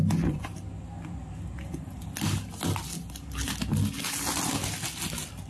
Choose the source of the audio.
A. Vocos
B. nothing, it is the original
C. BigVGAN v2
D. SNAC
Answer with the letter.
B